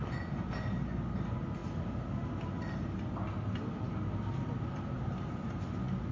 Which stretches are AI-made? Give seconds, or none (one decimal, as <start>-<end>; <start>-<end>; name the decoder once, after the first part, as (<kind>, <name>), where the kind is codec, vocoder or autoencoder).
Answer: none